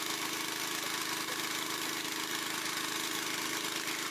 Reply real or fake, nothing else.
real